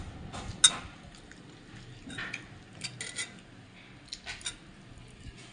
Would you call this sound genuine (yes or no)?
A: yes